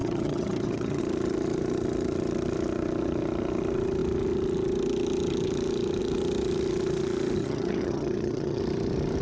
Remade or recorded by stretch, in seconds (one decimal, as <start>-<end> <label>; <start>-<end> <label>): 0.0-1.0 remade; 1.0-7.4 recorded; 7.4-8.6 remade; 8.6-9.2 recorded